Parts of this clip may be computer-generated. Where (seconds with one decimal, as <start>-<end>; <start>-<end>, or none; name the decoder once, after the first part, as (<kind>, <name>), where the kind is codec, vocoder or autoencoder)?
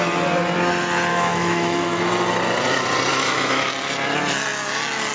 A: 1.1-2.0 (autoencoder, DAC-VAE); 3.1-3.7